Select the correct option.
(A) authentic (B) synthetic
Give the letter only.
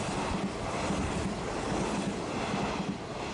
A